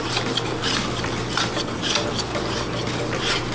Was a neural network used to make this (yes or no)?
no